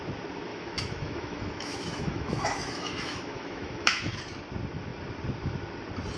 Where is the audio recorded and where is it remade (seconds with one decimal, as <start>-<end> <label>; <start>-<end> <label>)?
0.0-0.5 recorded; 0.5-4.2 remade; 4.2-6.2 recorded